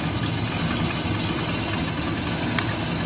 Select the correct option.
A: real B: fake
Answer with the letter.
A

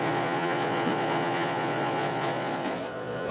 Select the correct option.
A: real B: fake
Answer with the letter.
B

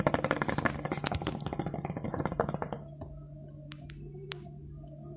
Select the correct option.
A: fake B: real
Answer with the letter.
B